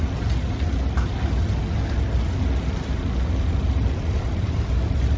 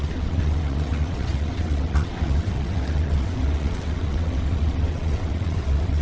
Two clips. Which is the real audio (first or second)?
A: first